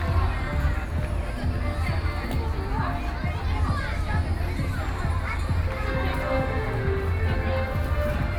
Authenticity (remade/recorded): recorded